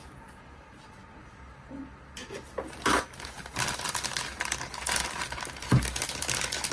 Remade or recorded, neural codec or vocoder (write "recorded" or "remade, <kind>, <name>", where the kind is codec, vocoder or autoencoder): recorded